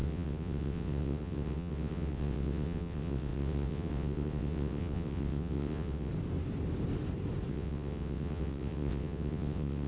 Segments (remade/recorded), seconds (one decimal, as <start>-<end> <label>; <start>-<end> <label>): 0.0-6.1 remade; 6.1-7.5 recorded; 7.5-9.9 remade

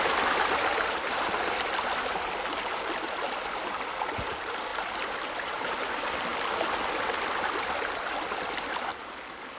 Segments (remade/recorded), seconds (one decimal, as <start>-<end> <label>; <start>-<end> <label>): 0.0-9.6 recorded

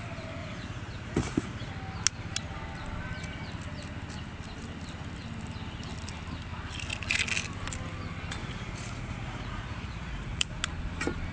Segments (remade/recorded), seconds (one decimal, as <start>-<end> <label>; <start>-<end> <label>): 0.0-0.4 recorded; 0.4-1.7 remade; 1.7-8.4 recorded; 8.4-10.6 remade; 10.6-11.3 recorded

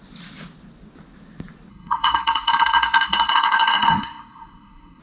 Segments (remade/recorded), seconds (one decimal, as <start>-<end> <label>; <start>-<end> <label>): 0.0-1.7 recorded; 1.7-5.0 remade

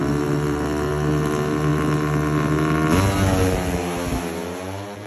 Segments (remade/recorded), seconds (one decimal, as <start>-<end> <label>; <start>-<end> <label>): 0.0-5.1 recorded

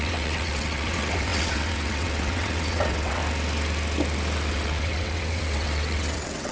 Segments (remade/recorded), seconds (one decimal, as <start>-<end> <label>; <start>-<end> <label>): 0.0-3.2 remade; 3.2-4.5 recorded; 4.5-6.5 remade

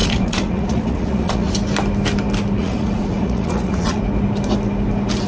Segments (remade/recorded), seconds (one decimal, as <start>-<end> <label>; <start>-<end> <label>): 0.0-1.5 remade; 1.5-2.6 recorded; 2.6-4.0 remade; 4.0-5.3 recorded

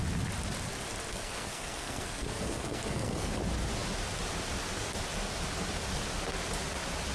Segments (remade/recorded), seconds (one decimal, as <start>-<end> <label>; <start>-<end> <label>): 0.0-1.1 recorded; 1.1-3.3 remade; 3.3-7.1 recorded